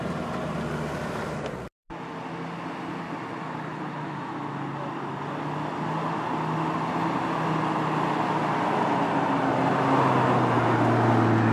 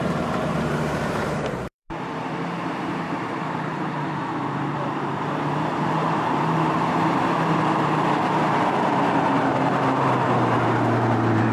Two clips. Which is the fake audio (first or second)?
second